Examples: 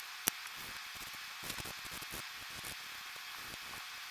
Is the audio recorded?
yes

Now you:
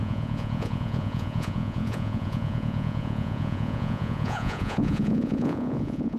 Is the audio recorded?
no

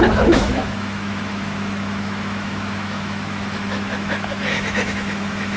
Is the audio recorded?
no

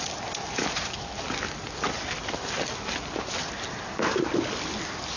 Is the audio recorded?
yes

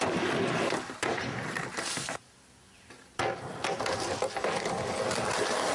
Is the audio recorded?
yes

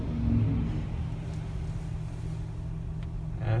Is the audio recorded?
yes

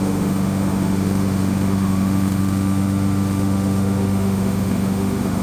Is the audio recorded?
no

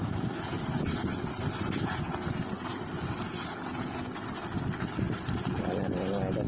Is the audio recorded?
yes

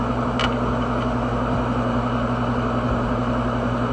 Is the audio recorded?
yes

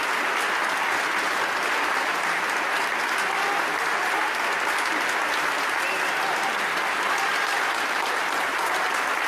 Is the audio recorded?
yes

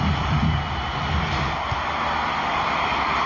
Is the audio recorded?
yes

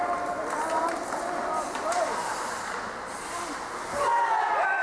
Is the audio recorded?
yes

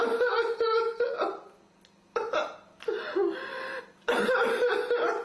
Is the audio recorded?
yes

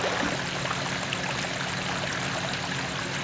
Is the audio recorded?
yes